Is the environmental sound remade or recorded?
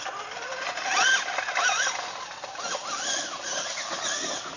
recorded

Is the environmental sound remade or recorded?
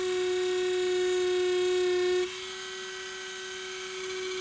recorded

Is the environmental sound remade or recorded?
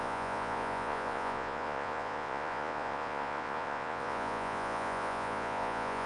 remade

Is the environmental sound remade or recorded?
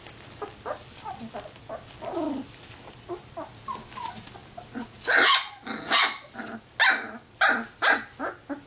recorded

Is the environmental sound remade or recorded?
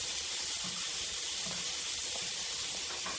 recorded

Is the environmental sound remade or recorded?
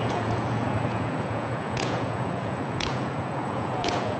remade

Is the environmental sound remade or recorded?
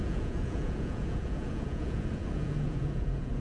remade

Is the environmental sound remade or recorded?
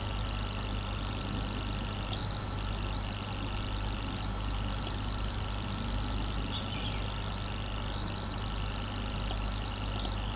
recorded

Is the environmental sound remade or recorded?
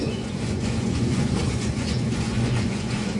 remade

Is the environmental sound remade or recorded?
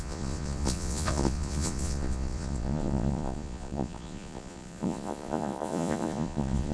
remade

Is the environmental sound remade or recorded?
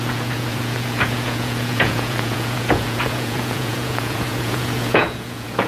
remade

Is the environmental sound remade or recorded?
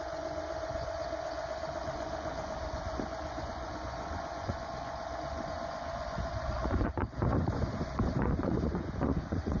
remade